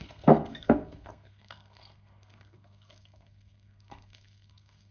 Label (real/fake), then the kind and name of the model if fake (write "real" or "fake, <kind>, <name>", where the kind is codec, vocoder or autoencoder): fake, codec, SNAC